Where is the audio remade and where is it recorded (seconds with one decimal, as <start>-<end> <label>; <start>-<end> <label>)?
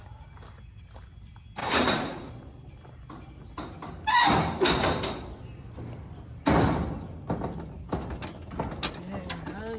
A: 0.0-1.6 recorded; 1.6-2.3 remade; 2.3-9.8 recorded